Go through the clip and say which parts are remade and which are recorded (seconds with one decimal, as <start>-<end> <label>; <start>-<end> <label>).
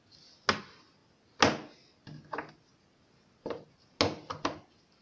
0.0-5.0 recorded